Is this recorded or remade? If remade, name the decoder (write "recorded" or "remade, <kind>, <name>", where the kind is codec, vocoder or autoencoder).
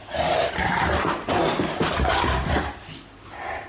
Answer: recorded